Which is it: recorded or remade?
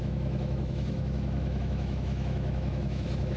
remade